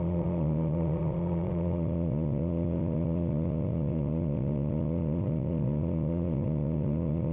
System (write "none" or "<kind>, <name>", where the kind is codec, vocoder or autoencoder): vocoder, Vocos